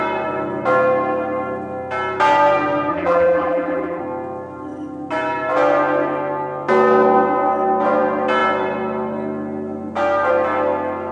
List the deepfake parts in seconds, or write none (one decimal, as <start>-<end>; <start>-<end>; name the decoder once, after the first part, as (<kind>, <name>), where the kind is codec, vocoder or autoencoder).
2.9-4.0 (vocoder, BigVGAN v2)